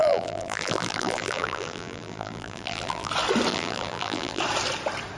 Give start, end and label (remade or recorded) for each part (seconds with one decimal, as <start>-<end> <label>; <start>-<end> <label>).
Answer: 0.0-3.1 remade; 3.1-3.5 recorded; 3.5-4.4 remade; 4.4-5.2 recorded